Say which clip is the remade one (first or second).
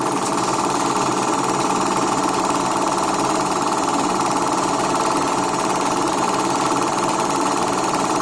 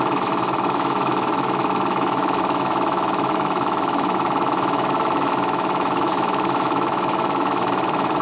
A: second